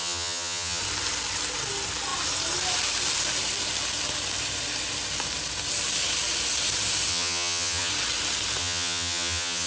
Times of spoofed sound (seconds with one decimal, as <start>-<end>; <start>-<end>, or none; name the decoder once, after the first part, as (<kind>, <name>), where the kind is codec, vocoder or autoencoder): 0.0-0.8 (vocoder, HiFi-GAN); 7.1-7.9; 8.6-9.7